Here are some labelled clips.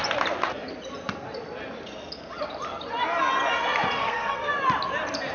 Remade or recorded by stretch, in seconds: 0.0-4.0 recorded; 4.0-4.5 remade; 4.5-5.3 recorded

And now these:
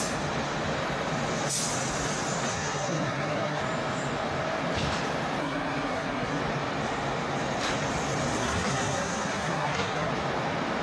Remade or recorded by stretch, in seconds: 0.0-2.5 recorded; 2.5-3.6 remade; 3.6-5.4 recorded; 5.4-6.4 remade; 6.4-8.4 recorded; 8.4-10.1 remade; 10.1-10.8 recorded

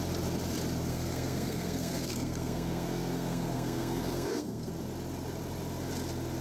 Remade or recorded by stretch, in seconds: 0.0-0.9 recorded; 0.9-4.7 remade; 4.7-6.4 recorded